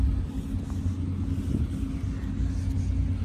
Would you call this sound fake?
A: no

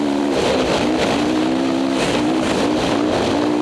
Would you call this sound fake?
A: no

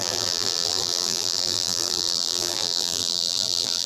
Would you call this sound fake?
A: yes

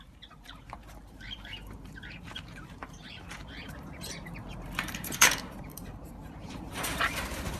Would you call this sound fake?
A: yes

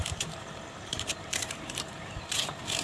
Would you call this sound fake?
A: yes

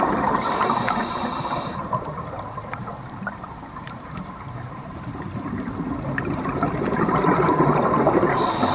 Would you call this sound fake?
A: yes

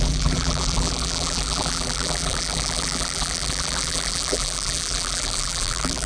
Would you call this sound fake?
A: yes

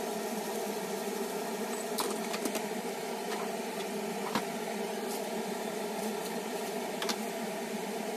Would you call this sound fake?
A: yes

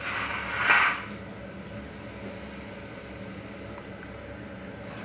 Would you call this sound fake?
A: no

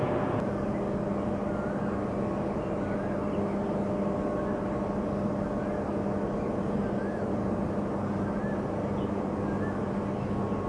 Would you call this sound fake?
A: no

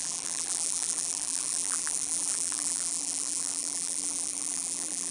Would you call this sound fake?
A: yes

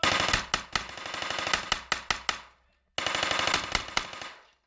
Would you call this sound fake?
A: no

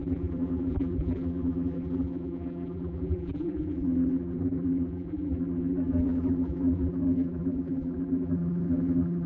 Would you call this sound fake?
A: yes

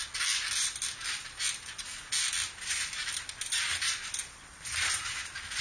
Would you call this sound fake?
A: no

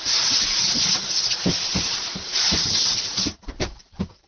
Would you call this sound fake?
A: yes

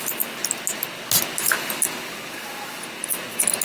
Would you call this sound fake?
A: no